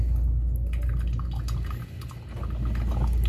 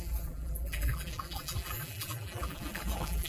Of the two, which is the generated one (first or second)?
second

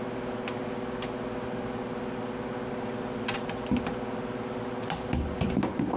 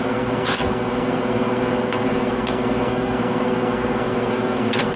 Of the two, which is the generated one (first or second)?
second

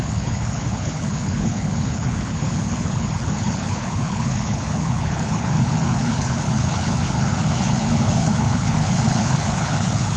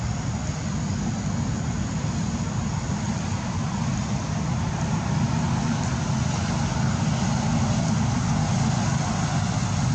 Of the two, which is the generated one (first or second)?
first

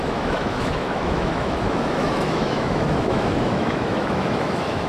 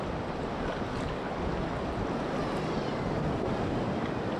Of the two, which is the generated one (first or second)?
first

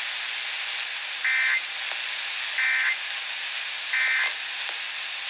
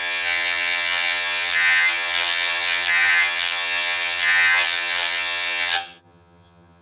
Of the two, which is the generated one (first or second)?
second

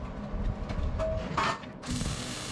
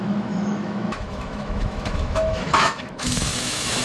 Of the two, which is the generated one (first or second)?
second